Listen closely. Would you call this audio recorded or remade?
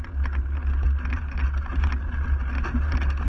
recorded